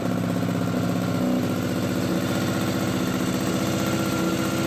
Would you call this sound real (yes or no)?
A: yes